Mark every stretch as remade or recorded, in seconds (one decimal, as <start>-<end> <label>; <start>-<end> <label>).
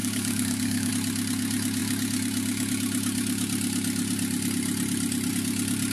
0.0-0.9 remade; 0.9-5.9 recorded